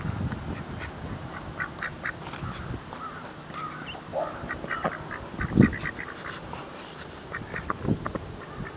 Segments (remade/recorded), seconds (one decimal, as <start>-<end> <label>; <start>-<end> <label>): 0.0-8.8 recorded